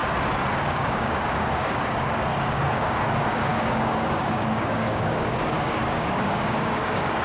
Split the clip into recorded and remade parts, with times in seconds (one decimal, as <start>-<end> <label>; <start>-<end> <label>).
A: 0.0-0.6 recorded; 0.6-7.2 remade